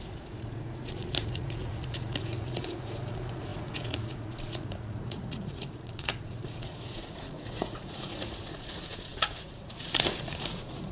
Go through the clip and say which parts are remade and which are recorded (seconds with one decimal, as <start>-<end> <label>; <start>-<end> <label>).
0.0-10.9 remade